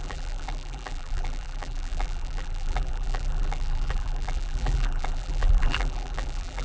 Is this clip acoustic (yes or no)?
no